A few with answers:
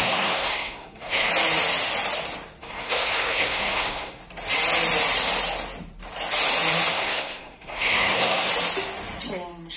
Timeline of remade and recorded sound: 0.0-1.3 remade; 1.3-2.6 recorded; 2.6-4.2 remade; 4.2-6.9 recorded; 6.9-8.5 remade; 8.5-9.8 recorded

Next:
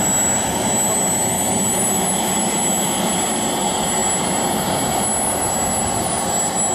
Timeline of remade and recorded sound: 0.0-6.7 recorded

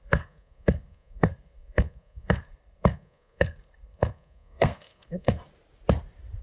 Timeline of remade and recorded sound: 0.0-5.4 remade; 5.4-6.4 recorded

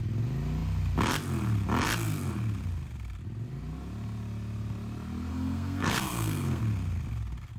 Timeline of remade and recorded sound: 0.0-5.3 recorded; 5.3-6.6 remade; 6.6-7.6 recorded

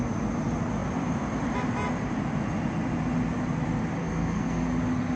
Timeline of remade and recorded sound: 0.0-4.0 recorded; 4.0-4.6 remade; 4.6-5.2 recorded